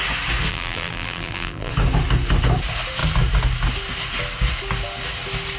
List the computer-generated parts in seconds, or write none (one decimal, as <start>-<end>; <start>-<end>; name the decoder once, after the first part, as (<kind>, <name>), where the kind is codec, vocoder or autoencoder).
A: 0.5-1.7 (vocoder, BigVGAN v2)